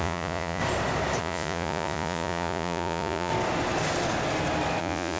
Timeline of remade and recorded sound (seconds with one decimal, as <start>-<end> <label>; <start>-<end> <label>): 0.0-0.6 remade; 0.6-1.2 recorded; 1.2-3.3 remade; 3.3-4.8 recorded; 4.8-5.2 remade